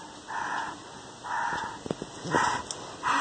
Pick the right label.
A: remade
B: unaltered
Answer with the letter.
B